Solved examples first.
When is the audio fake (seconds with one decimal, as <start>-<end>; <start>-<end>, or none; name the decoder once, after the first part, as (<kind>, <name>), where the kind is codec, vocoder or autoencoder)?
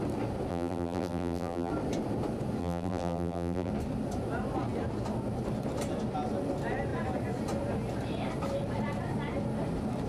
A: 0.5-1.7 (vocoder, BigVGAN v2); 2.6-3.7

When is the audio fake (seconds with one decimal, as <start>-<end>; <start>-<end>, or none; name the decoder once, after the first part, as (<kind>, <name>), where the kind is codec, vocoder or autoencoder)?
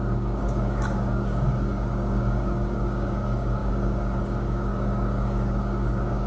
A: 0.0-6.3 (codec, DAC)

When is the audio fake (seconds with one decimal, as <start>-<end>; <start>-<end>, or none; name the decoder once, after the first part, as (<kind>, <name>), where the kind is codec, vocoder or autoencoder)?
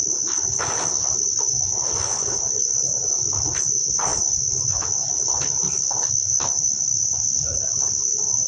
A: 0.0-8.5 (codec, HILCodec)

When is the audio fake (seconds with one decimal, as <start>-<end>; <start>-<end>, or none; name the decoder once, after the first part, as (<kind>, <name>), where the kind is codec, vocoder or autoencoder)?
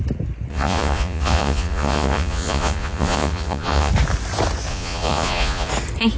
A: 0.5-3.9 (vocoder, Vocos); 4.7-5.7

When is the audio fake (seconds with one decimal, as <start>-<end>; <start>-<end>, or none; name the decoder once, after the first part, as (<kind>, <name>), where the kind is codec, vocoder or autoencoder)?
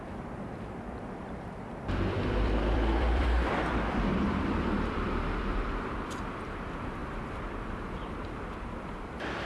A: 0.0-9.5 (vocoder, BigVGAN v2)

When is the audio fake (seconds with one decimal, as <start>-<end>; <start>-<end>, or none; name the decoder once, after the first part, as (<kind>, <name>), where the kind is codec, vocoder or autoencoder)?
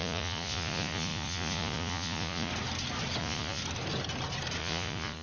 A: 0.0-2.5 (vocoder, Vocos); 3.2-3.6; 4.6-5.2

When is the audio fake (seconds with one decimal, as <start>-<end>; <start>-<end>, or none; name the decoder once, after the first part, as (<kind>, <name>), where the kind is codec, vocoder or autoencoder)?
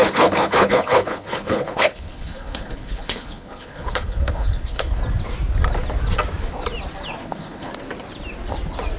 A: 0.0-5.0 (codec, HILCodec); 7.2-7.7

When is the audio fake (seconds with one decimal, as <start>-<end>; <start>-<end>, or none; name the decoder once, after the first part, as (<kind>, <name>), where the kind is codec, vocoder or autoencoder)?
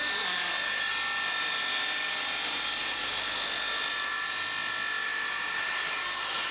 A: none